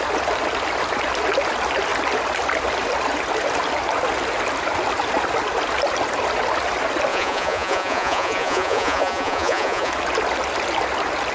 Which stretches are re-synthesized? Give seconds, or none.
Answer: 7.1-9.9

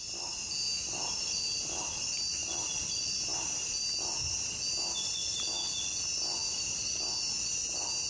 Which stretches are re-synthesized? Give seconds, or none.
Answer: 2.4-3.7

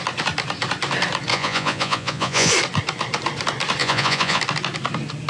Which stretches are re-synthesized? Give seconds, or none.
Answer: 1.3-2.5; 3.8-4.4

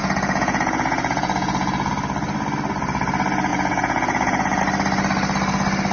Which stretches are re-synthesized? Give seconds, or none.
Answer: 0.0-1.9; 3.5-4.6

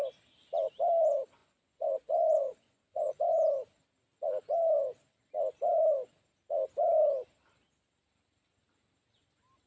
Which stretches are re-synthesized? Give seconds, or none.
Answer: 1.4-3.2

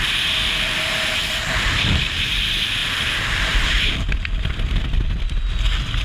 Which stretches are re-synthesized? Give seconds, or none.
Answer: 2.8-5.2